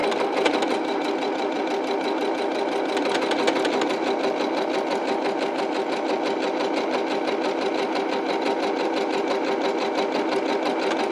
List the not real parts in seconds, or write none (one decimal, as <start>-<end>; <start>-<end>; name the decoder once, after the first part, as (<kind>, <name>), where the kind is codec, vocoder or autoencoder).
none

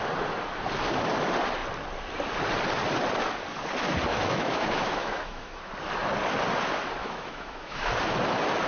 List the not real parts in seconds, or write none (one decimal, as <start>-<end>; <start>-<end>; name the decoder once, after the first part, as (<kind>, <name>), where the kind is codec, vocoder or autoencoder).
4.1-5.7 (autoencoder, DAC-VAE); 7.0-7.9

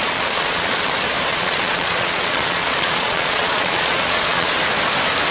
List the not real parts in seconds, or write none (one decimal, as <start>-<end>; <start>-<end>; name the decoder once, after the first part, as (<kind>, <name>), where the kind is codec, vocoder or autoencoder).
0.0-0.9 (vocoder, Vocos); 1.3-4.5

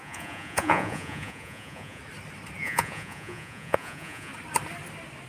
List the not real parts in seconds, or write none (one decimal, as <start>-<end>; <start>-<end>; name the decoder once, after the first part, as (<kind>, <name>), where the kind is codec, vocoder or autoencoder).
0.0-2.0 (vocoder, Vocos); 2.6-4.3

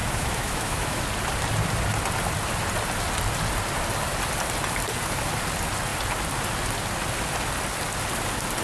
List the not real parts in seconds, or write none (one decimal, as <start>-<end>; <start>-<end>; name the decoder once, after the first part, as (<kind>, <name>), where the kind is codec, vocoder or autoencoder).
0.0-1.0 (autoencoder, DAC-VAE)

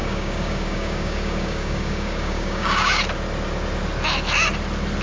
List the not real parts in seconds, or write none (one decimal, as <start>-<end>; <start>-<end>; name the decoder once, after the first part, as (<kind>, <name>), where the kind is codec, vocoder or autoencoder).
0.0-3.0 (codec, DAC)

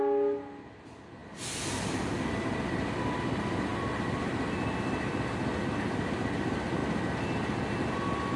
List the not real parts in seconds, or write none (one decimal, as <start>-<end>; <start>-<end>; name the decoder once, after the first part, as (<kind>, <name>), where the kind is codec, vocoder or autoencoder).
none